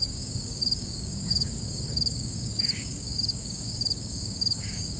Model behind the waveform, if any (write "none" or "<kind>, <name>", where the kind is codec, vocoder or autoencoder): codec, DAC